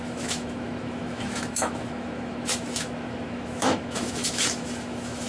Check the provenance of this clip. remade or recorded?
remade